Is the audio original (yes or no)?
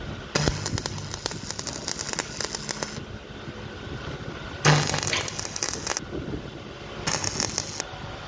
yes